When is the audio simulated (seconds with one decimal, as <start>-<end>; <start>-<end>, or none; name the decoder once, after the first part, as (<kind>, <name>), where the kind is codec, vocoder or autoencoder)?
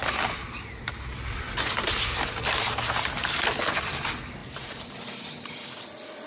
none